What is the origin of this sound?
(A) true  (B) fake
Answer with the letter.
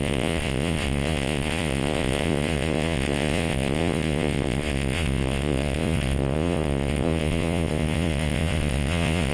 B